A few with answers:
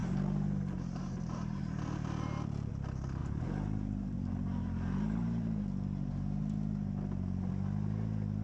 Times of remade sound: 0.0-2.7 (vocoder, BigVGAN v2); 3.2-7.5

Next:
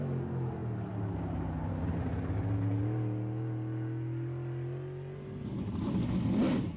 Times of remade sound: none

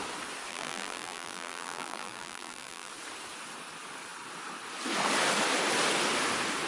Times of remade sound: 0.5-2.9 (vocoder, BigVGAN v2)